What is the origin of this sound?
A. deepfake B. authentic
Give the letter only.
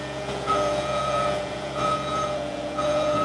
A